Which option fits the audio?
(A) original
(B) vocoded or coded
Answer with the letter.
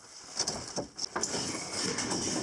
A